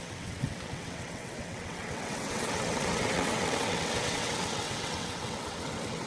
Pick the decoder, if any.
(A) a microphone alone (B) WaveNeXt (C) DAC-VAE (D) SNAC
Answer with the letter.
B